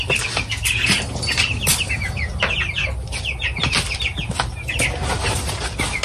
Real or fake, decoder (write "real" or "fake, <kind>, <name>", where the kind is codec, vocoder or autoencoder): real